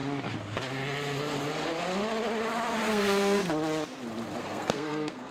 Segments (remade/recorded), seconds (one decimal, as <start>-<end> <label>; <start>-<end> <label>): 0.0-2.9 recorded; 2.9-3.4 remade; 3.4-4.4 recorded; 4.4-5.3 remade